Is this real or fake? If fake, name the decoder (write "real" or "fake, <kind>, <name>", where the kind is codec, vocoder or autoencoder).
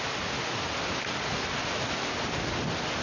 real